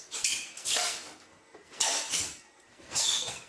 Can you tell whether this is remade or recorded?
remade